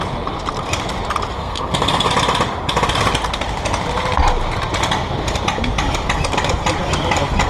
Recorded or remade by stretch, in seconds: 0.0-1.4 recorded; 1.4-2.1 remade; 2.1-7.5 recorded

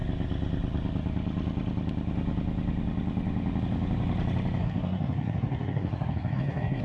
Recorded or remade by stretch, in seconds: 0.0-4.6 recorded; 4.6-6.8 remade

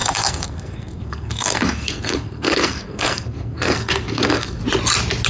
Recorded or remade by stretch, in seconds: 0.0-4.6 remade; 4.6-5.3 recorded

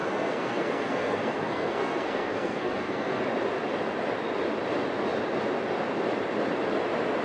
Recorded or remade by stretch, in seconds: 0.0-3.2 remade; 3.2-7.2 recorded